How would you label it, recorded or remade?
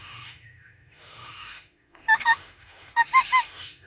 remade